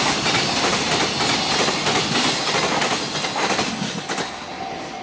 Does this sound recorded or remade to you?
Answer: recorded